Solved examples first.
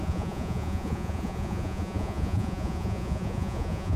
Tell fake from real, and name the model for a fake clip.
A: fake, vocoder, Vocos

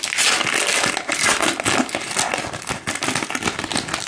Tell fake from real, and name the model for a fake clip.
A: real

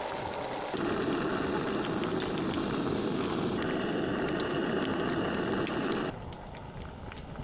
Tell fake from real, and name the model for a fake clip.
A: real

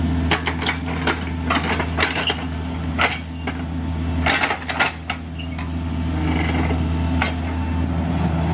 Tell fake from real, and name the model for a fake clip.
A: real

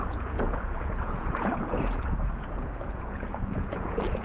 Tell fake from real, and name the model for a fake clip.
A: fake, vocoder, Vocos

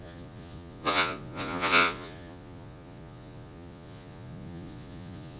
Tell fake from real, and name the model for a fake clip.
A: fake, vocoder, Vocos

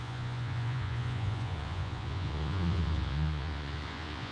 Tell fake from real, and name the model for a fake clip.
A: fake, vocoder, Vocos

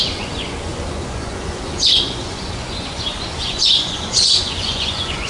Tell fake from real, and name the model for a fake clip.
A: fake, vocoder, Vocos